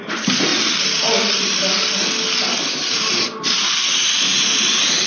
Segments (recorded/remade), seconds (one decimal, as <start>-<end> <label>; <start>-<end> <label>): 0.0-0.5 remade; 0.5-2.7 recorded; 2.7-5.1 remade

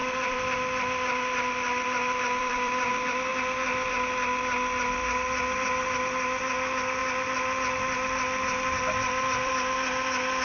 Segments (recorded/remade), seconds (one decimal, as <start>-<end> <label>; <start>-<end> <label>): 0.0-2.9 remade; 2.9-3.3 recorded; 3.3-3.9 remade; 3.9-7.0 recorded; 7.0-9.5 remade; 9.5-10.4 recorded

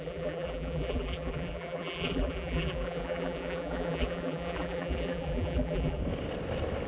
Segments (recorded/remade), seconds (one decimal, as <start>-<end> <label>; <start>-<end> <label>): 0.0-6.0 remade; 6.0-6.9 recorded

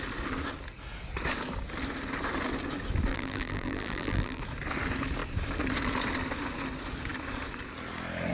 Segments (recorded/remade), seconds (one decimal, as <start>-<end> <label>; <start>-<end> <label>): 0.0-3.1 recorded; 3.1-4.4 remade; 4.4-8.3 recorded